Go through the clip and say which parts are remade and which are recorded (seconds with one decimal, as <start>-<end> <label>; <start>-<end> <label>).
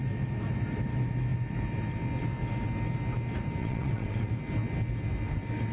0.0-3.6 recorded; 3.6-4.3 remade; 4.3-5.7 recorded